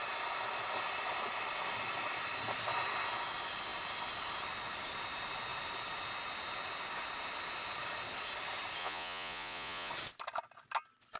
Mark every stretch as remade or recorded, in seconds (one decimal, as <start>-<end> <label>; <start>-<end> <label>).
0.0-8.8 recorded; 8.8-9.9 remade; 9.9-11.2 recorded